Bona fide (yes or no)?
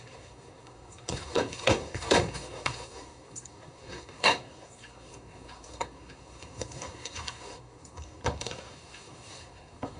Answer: no